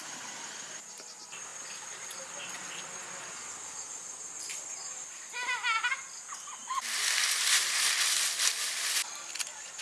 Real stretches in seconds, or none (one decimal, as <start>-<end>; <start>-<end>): 0.0-9.8